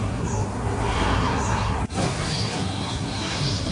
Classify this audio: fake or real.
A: fake